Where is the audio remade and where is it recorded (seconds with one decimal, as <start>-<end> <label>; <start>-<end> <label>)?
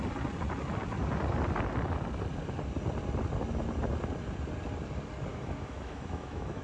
0.0-5.3 recorded; 5.3-6.6 remade